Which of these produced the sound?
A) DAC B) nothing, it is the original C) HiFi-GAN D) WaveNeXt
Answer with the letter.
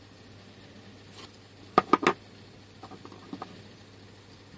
B